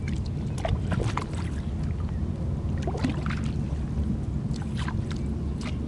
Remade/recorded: recorded